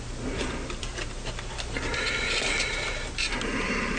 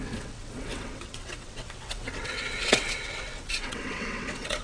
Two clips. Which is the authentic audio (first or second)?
first